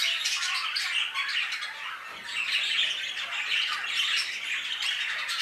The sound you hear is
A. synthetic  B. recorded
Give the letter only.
B